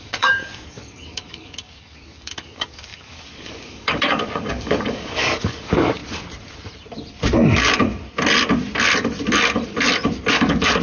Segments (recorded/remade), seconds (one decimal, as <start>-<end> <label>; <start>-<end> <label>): 0.0-6.0 remade; 6.0-10.3 recorded; 10.3-10.8 remade